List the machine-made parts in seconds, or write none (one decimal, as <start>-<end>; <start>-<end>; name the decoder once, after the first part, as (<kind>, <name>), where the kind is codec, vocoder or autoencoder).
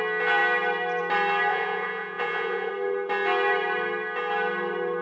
1.5-2.7 (vocoder, Vocos)